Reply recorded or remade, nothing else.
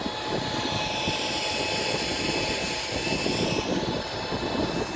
recorded